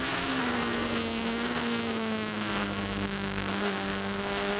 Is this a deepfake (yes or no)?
yes